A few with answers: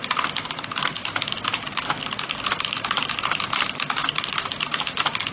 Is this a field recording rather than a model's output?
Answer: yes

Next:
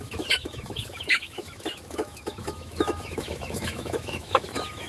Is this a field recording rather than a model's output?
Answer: no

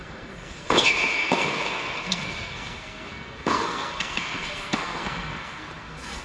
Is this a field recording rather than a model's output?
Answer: no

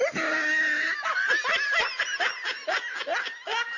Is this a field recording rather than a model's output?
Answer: yes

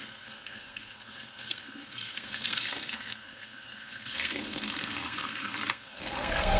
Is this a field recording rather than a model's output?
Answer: no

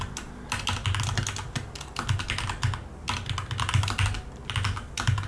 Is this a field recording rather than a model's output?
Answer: yes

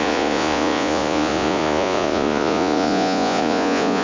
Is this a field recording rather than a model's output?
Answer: no